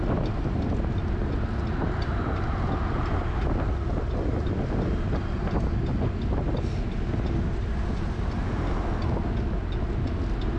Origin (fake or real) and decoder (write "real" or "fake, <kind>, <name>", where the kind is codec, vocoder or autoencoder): real